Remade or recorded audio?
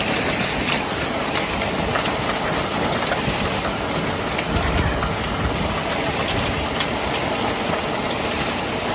recorded